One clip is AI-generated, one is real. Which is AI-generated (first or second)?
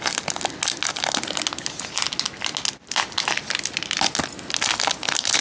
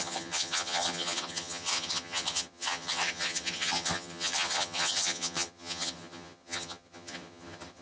second